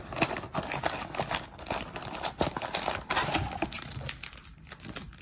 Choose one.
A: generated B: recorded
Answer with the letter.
B